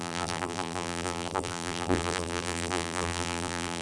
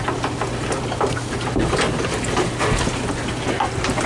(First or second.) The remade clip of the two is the first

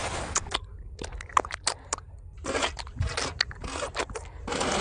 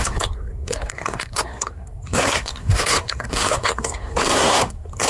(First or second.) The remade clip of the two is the second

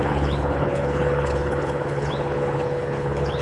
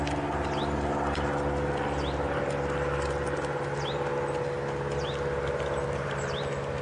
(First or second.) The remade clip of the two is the first